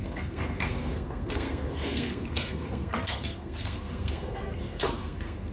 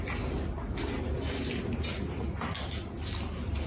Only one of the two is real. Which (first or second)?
second